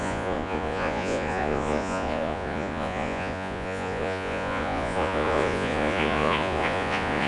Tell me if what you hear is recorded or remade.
remade